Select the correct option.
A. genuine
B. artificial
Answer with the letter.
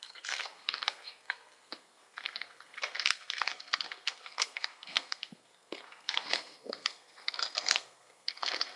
B